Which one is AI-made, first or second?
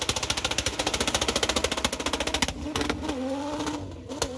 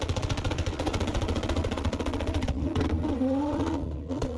second